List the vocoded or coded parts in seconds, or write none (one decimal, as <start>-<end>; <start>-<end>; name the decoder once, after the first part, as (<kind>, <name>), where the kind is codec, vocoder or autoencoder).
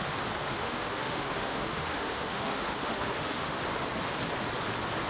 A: 0.5-3.6 (autoencoder, DAC-VAE)